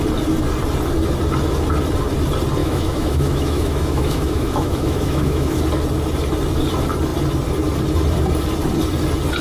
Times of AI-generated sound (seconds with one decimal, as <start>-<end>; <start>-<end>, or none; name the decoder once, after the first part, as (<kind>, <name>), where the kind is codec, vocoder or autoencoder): 2.6-5.6 (autoencoder, DAC-VAE)